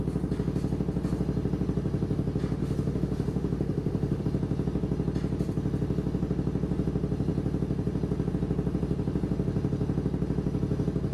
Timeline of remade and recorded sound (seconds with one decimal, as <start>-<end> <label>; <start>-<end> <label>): 0.0-2.6 recorded; 2.6-4.2 remade; 4.2-11.1 recorded